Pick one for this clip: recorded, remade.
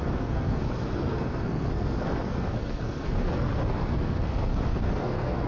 remade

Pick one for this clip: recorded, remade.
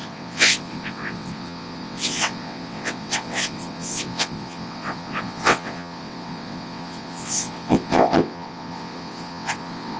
remade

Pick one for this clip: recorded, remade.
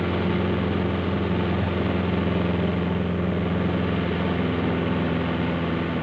recorded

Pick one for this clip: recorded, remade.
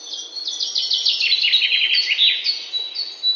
recorded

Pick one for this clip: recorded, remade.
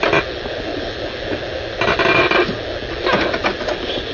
recorded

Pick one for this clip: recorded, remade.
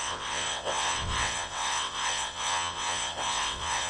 remade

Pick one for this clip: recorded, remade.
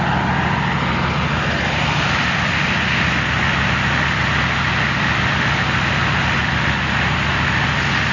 recorded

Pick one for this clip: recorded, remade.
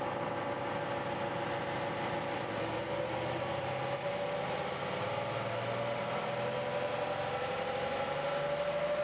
recorded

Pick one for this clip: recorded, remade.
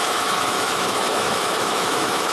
remade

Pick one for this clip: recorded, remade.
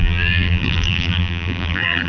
remade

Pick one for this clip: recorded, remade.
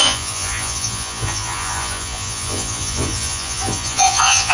remade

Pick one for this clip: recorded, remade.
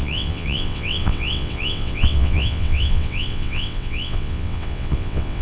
remade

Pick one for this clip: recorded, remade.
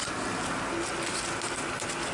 recorded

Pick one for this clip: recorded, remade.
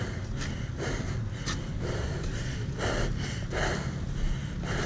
recorded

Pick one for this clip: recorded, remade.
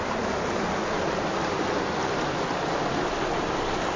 recorded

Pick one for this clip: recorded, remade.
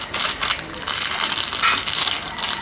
recorded